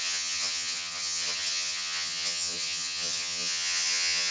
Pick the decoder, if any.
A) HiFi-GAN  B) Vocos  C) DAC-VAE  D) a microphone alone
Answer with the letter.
A